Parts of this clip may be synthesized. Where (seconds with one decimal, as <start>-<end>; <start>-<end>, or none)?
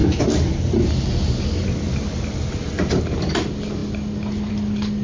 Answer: none